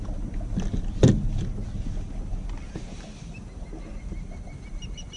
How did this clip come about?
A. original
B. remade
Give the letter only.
A